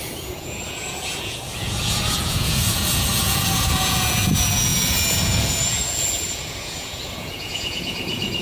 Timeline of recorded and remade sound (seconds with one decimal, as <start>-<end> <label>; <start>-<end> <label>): 0.0-8.4 remade